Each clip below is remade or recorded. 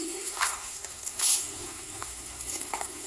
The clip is remade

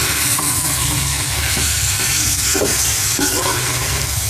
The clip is remade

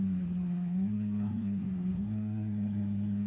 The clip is remade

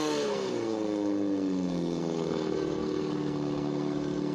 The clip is remade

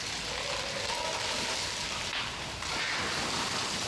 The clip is recorded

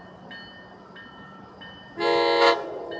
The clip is recorded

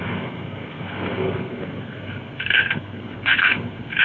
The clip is remade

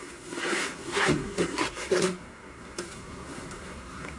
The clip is remade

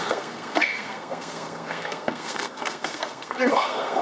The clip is remade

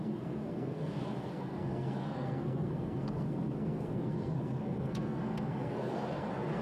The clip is remade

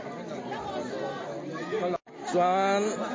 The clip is recorded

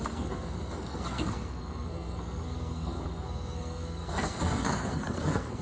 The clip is remade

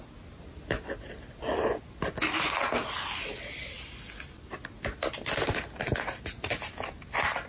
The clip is recorded